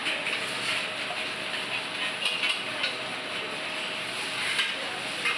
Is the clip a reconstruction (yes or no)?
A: no